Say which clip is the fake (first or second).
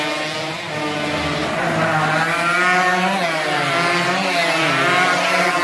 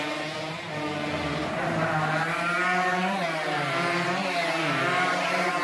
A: second